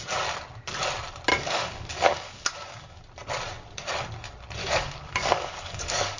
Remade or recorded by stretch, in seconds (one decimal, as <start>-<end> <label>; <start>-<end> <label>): 0.0-1.3 recorded; 1.3-3.0 remade; 3.0-4.6 recorded; 4.6-6.2 remade